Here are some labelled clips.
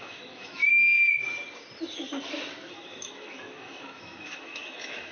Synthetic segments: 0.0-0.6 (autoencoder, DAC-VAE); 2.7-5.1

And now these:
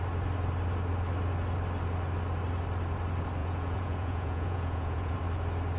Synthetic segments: 3.4-5.2 (vocoder, Vocos)